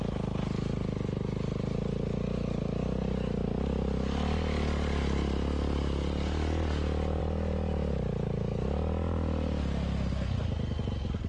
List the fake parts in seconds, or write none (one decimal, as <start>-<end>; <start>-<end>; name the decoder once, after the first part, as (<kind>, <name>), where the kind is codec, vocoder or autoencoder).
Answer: none